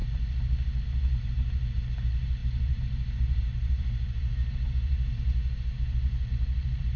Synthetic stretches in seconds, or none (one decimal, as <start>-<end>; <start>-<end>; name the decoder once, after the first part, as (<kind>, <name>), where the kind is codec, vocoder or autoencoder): 1.2-7.0 (vocoder, BigVGAN v2)